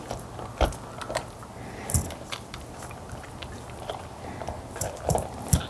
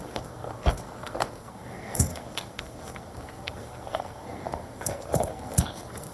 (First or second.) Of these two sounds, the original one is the first